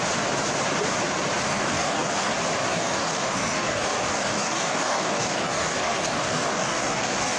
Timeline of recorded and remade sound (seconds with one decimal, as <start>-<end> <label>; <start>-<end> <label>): 0.0-1.5 recorded; 1.5-2.3 remade; 2.3-2.7 recorded; 2.7-7.4 remade